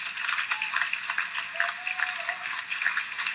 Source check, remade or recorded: recorded